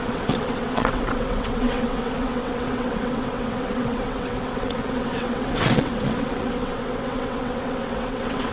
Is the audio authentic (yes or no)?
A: no